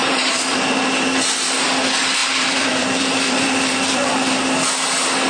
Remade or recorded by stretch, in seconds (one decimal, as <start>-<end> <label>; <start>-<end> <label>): 0.0-0.7 remade; 0.7-2.2 recorded; 2.2-4.1 remade; 4.1-5.3 recorded